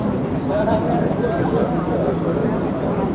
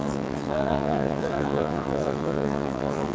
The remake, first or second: second